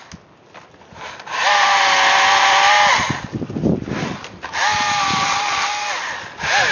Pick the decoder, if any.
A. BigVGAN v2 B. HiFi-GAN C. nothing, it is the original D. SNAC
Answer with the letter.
C